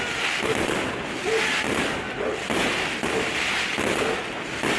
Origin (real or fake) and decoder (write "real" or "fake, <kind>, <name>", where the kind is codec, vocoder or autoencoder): real